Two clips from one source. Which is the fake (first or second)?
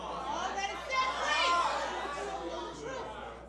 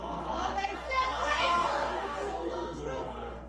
second